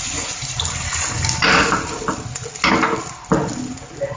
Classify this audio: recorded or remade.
recorded